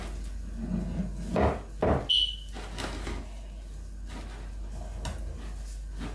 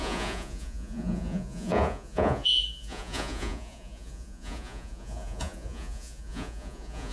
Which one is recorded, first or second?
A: first